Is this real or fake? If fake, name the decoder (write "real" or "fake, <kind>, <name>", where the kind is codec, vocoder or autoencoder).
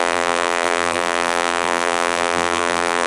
fake, vocoder, BigVGAN v2